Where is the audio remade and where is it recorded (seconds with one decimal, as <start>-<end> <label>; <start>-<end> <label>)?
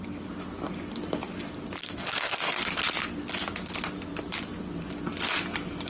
0.0-1.8 recorded; 1.8-2.6 remade; 2.6-5.9 recorded